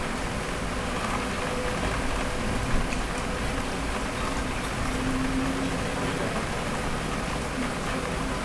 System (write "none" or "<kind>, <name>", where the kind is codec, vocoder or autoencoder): none